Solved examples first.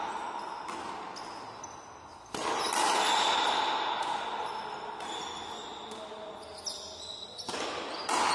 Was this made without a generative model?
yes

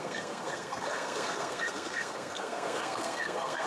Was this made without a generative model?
no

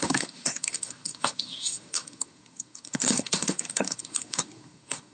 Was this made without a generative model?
no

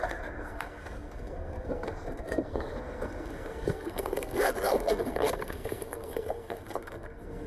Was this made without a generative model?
no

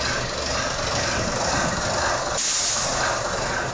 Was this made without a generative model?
yes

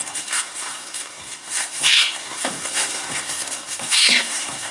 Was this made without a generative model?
no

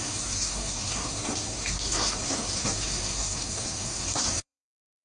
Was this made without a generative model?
no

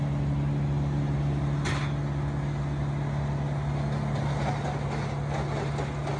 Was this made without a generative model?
yes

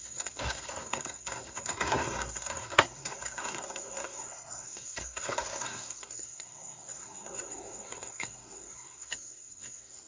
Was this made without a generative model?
no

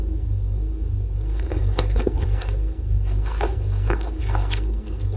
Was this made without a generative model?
no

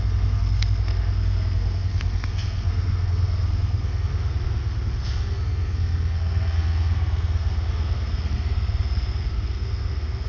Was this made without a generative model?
no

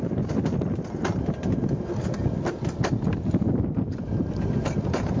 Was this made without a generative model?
yes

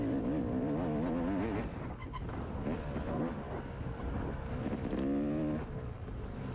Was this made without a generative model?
yes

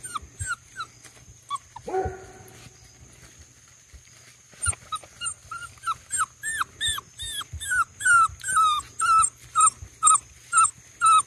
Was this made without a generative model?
yes